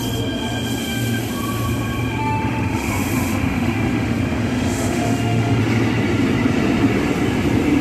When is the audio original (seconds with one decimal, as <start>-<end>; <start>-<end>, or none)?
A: 0.0-0.8; 1.3-2.2; 5.6-7.8